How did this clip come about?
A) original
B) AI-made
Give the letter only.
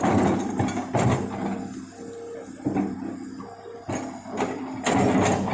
A